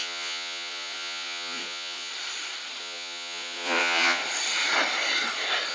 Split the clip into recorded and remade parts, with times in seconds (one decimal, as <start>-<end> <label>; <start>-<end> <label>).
0.0-2.1 remade; 2.1-2.8 recorded; 2.8-4.2 remade; 4.2-5.7 recorded